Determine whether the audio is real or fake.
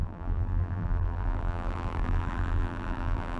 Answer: fake